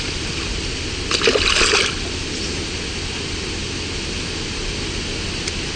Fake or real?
real